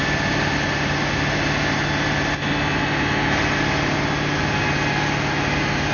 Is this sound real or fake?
real